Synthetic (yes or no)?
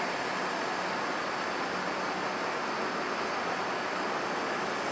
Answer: no